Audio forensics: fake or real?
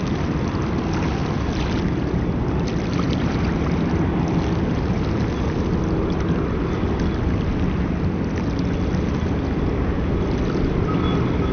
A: real